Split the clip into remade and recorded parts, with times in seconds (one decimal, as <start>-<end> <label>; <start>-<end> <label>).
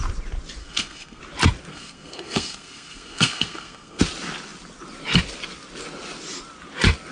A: 0.0-0.6 recorded; 0.6-1.2 remade; 1.2-1.7 recorded; 1.7-4.0 remade; 4.0-7.1 recorded